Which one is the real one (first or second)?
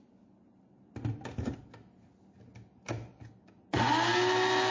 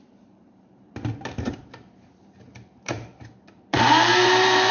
first